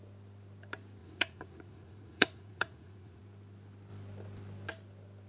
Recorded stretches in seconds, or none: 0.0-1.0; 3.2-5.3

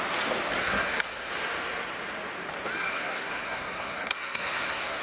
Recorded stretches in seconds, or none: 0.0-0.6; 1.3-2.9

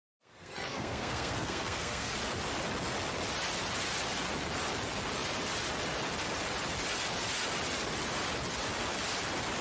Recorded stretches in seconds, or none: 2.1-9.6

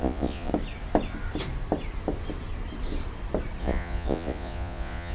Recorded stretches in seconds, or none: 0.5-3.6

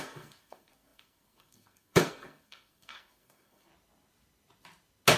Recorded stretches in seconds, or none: 3.7-5.2